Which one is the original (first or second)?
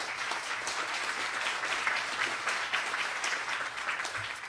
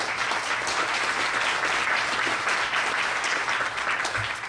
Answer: second